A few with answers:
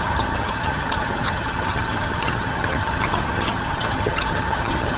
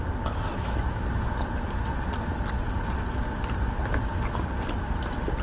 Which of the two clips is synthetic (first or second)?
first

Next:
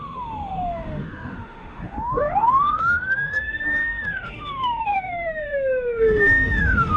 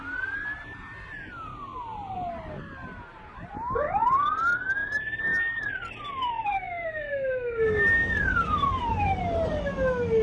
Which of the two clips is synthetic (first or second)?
first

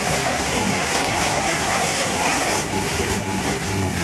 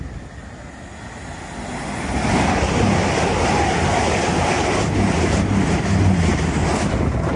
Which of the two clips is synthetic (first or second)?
first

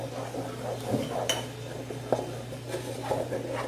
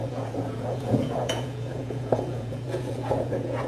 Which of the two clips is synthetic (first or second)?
second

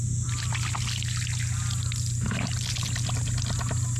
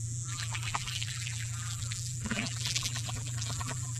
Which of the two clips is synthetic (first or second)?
second